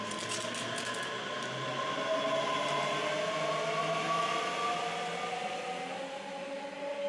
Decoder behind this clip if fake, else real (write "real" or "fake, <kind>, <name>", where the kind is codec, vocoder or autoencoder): real